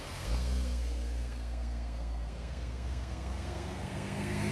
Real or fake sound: fake